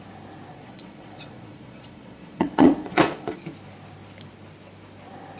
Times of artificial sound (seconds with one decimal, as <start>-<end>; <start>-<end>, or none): 0.5-3.4